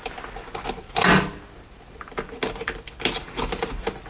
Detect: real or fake real